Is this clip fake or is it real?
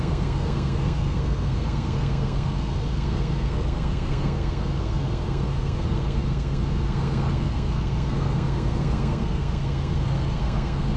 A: fake